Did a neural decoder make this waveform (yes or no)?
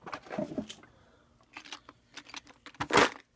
no